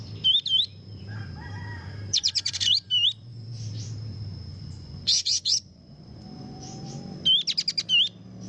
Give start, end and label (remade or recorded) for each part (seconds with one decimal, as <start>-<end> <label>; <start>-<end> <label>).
0.0-2.1 recorded; 2.1-2.7 remade; 2.7-4.5 recorded; 4.5-6.9 remade; 6.9-8.5 recorded